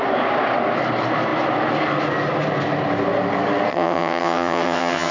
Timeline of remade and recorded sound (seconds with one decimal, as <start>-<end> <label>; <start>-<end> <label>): 0.0-3.7 recorded; 3.7-5.1 remade